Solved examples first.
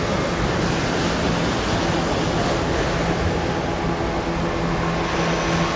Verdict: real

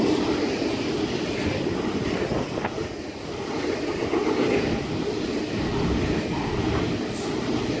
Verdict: real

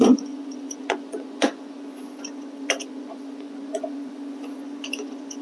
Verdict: fake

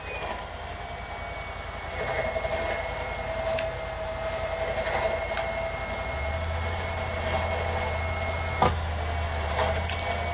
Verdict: real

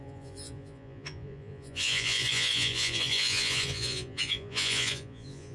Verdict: fake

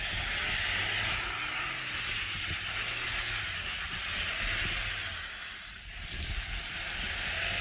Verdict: real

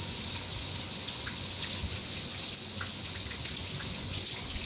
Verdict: fake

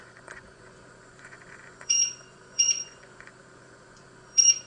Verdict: fake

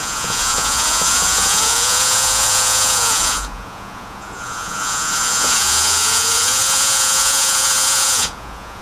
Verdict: fake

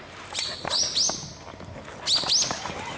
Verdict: real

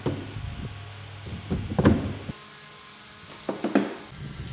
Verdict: real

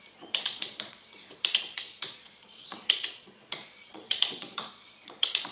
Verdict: fake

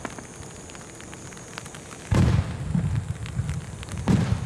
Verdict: real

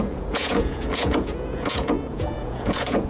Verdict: fake